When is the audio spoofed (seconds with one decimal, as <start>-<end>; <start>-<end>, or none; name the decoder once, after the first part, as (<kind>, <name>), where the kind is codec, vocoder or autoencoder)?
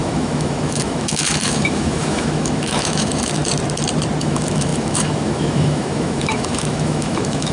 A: 0.0-3.4 (autoencoder, DAC-VAE); 4.2-7.5